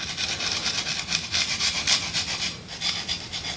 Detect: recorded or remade recorded